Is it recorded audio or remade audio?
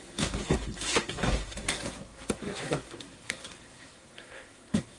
remade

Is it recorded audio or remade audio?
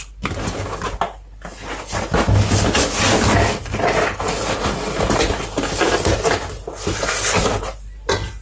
recorded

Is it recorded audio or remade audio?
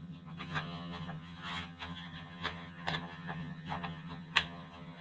remade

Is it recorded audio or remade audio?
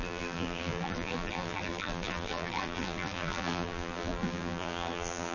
remade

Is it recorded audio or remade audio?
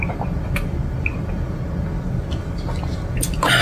recorded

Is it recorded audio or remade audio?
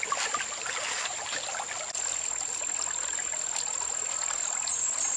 recorded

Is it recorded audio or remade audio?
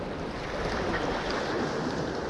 recorded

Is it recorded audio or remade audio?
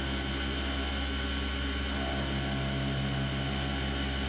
recorded